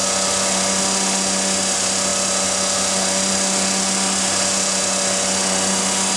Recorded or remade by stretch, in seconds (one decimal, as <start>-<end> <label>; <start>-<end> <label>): 0.0-6.2 recorded